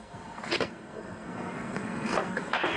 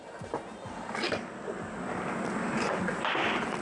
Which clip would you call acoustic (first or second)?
second